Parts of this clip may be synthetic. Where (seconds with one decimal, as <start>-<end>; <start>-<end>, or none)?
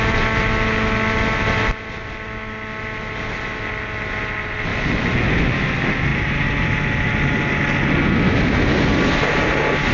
6.1-7.1